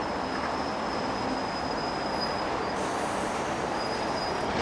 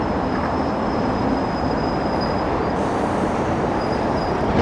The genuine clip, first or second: first